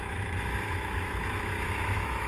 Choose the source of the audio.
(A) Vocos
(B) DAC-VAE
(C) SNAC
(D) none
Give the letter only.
B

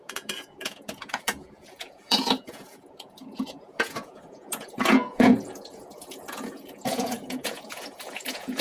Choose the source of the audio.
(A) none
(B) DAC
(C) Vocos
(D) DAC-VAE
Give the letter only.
C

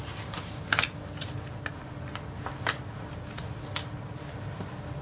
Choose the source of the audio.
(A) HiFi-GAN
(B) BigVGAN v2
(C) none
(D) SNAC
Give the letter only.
C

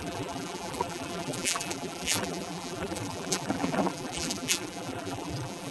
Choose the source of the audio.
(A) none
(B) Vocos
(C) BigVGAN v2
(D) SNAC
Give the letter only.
C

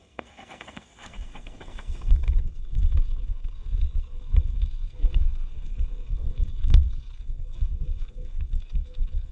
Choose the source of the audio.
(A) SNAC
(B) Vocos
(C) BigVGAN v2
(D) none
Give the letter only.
A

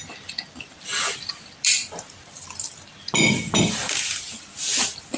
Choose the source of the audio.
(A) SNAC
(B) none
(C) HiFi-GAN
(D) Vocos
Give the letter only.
B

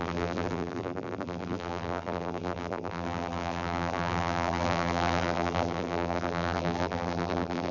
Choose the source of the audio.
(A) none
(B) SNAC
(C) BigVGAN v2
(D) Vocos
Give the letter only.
C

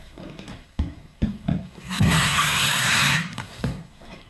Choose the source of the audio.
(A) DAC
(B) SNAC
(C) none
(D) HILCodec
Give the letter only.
B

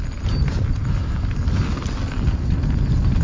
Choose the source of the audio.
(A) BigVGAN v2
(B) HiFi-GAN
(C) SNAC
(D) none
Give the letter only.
D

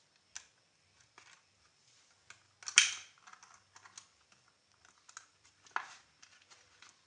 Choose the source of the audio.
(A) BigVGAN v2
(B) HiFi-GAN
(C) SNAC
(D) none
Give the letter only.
D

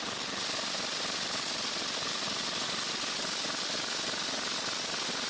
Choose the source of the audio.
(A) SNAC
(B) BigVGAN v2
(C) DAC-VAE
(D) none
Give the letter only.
D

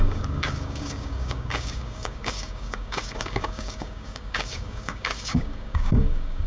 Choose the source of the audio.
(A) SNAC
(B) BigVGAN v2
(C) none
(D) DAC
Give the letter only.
D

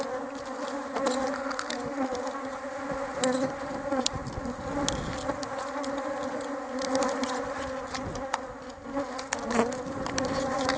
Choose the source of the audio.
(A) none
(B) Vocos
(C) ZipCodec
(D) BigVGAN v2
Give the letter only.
A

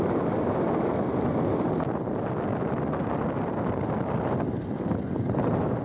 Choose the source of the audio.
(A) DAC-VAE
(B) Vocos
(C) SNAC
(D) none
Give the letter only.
D